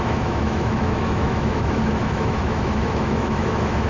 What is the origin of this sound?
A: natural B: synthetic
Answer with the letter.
B